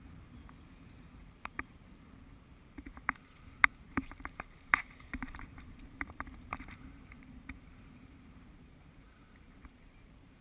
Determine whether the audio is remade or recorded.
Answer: remade